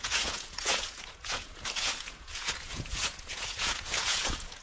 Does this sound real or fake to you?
fake